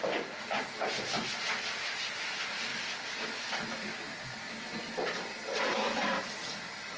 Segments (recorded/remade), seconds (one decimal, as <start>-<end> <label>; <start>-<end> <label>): 0.0-2.7 recorded; 2.7-7.0 remade